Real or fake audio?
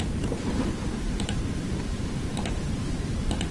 real